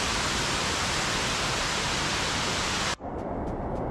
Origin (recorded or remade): recorded